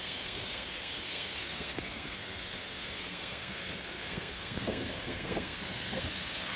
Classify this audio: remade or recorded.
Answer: remade